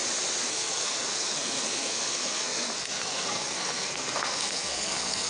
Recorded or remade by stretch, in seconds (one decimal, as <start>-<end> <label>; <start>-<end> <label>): 0.0-0.5 recorded; 0.5-5.3 remade